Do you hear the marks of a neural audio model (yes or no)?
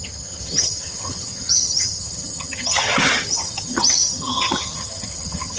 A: yes